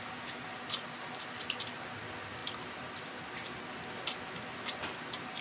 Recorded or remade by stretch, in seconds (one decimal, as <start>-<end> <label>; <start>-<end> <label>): 0.0-2.4 recorded; 2.4-3.3 remade; 3.3-5.4 recorded